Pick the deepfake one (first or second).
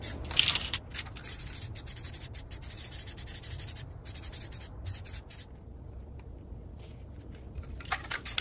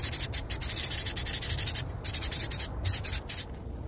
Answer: second